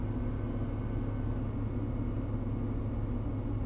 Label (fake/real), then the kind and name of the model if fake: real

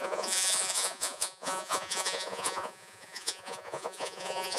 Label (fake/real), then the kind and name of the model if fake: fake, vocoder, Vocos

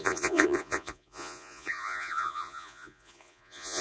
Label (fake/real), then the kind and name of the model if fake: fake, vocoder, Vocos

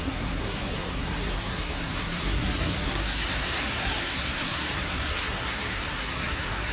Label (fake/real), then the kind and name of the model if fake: fake, codec, SNAC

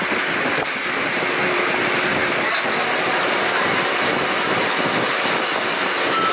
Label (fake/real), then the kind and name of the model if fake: fake, vocoder, BigVGAN v2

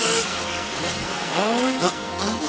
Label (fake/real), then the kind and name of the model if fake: fake, codec, SNAC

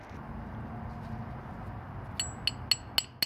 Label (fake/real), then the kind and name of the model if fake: real